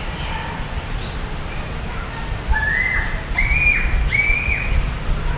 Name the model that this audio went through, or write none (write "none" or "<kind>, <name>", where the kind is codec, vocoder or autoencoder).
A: none